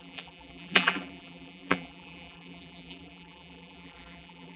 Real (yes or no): no